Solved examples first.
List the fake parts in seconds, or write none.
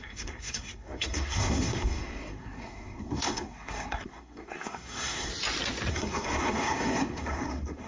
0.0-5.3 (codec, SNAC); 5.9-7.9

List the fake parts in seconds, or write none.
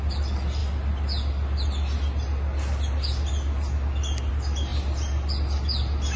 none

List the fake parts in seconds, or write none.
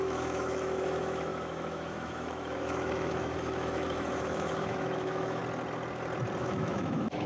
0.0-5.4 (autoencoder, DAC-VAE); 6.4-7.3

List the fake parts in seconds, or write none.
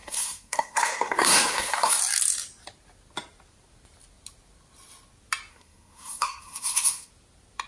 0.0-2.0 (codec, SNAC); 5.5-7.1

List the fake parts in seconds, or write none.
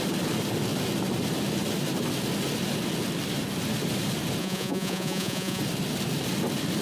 4.4-5.6 (vocoder, Vocos)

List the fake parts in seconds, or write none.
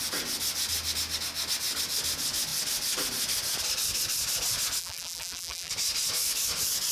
4.8-5.7 (vocoder, BigVGAN v2)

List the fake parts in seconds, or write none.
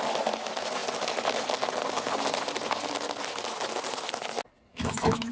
4.7-5.3 (autoencoder, DAC-VAE)